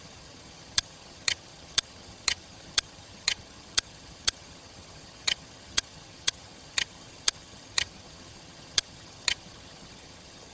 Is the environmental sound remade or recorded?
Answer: remade